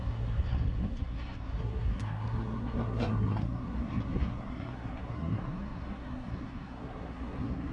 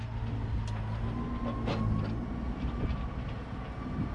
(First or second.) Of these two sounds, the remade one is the first